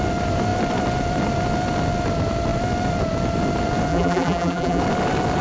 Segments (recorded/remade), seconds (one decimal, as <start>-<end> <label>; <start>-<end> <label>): 0.0-3.9 recorded; 3.9-4.8 remade; 4.8-5.4 recorded

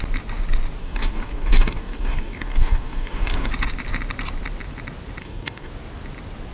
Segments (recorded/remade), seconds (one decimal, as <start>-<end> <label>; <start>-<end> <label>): 0.0-0.8 recorded; 0.8-3.5 remade; 3.5-5.2 recorded; 5.2-5.7 remade; 5.7-6.5 recorded

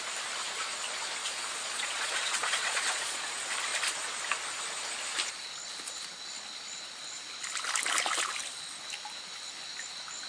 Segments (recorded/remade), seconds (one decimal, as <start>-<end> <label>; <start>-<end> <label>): 0.0-1.2 recorded; 1.2-3.3 remade; 3.3-10.3 recorded

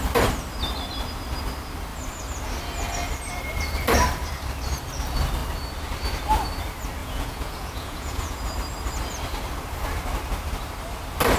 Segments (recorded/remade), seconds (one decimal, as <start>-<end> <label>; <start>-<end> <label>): 0.0-7.0 recorded; 7.0-8.4 remade; 8.4-11.4 recorded

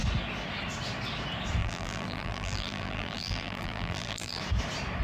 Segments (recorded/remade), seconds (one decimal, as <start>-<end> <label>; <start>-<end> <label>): 0.0-1.6 recorded; 1.6-4.4 remade; 4.4-5.0 recorded